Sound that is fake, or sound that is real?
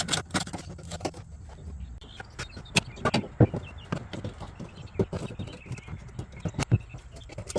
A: real